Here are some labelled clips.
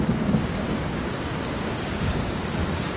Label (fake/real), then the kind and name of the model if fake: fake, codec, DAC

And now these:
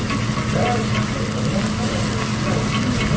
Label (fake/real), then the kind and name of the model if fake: real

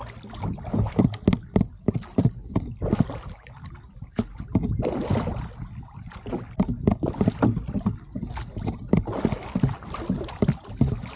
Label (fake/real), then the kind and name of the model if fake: real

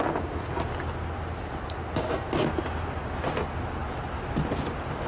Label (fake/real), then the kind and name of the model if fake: real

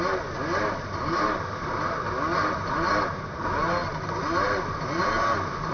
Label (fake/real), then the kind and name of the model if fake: real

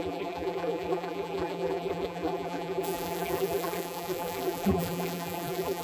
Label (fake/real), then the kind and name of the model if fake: fake, vocoder, BigVGAN v2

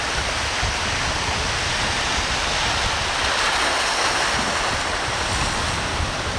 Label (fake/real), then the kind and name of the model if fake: real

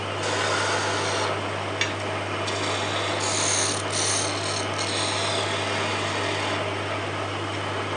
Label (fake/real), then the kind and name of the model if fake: real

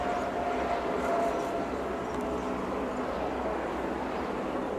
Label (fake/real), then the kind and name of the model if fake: real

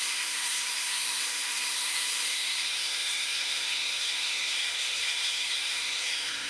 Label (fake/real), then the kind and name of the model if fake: fake, codec, SNAC